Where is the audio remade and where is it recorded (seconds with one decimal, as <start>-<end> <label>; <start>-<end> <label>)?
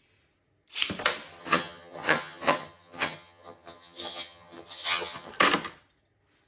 0.0-1.4 recorded; 1.4-5.3 remade; 5.3-6.5 recorded